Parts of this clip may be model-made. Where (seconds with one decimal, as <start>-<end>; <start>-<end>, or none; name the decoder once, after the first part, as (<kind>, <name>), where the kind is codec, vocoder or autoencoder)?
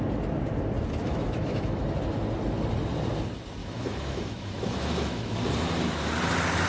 1.0-1.8 (autoencoder, DAC-VAE); 3.6-5.3